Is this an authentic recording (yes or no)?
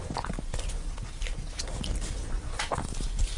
no